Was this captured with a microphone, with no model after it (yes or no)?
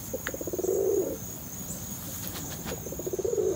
no